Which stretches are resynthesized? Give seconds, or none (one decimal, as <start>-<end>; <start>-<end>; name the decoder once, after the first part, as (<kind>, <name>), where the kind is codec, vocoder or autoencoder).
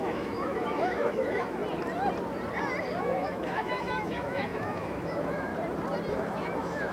0.0-1.6 (autoencoder, DAC-VAE); 3.0-5.5; 6.1-6.9